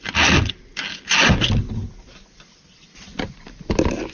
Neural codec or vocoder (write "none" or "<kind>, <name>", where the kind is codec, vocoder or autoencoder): none